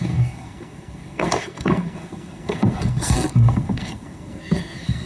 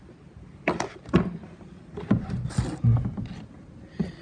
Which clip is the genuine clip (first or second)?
second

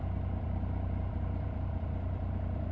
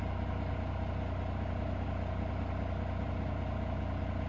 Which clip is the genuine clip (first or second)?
second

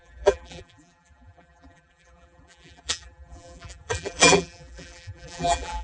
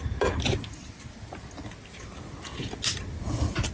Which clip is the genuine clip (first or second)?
second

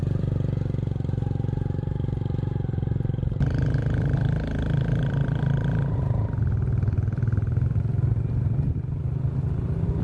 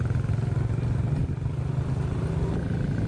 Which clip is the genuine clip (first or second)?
second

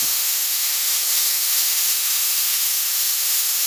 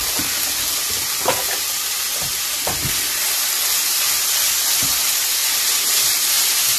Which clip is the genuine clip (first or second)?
second